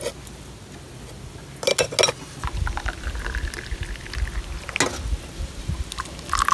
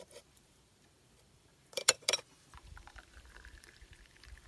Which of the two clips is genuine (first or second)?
first